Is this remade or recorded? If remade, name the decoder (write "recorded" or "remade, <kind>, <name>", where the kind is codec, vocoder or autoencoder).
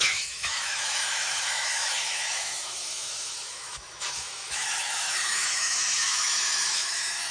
remade, autoencoder, DAC-VAE